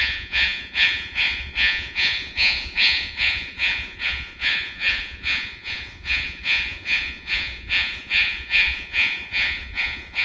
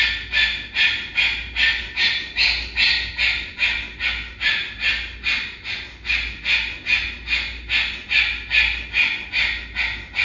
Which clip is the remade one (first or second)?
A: first